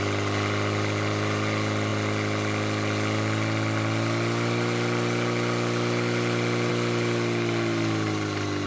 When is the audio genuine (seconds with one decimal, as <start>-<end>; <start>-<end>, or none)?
0.0-8.7